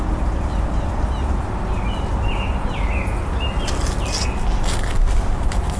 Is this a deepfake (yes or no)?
no